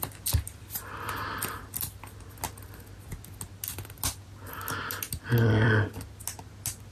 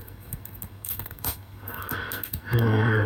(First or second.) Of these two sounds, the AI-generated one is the second